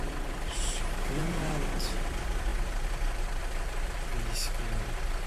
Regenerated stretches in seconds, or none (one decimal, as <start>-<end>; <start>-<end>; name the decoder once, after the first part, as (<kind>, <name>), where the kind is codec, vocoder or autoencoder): 0.0-4.1 (vocoder, BigVGAN v2); 4.8-5.3